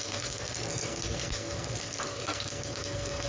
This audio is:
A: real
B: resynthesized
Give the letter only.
B